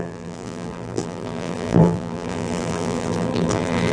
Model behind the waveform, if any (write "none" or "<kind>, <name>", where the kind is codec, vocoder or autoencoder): vocoder, BigVGAN v2